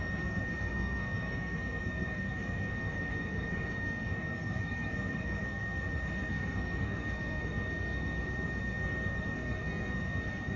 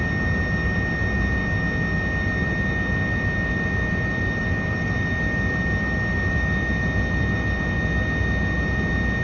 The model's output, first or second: first